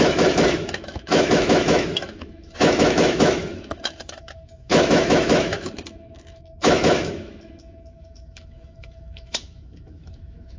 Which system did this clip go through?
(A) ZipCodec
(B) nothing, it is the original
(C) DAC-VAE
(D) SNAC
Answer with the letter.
C